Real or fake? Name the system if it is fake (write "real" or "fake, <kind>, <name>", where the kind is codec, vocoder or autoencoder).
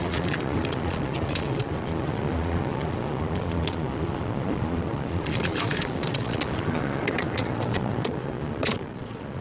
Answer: fake, vocoder, Vocos